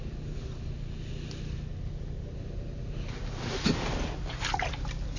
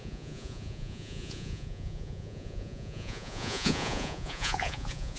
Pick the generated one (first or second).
second